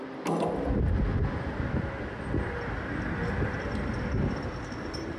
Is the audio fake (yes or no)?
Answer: no